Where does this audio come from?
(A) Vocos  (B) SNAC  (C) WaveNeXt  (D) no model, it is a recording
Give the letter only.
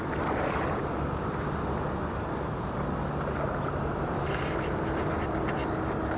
D